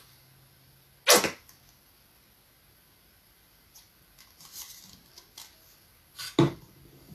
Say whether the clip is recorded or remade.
recorded